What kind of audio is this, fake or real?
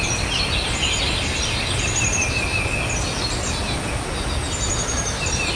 real